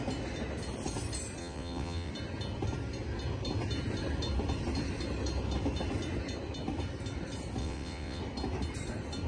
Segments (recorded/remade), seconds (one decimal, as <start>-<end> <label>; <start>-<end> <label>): 0.0-1.4 recorded; 1.4-2.1 remade; 2.1-7.6 recorded; 7.6-8.2 remade; 8.2-9.3 recorded